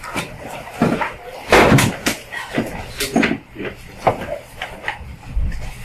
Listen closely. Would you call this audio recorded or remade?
recorded